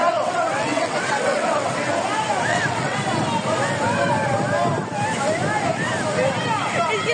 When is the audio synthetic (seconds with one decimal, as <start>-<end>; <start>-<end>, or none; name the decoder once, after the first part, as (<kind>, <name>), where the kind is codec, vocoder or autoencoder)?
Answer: 0.0-1.9 (vocoder, WaveNeXt); 2.5-3.0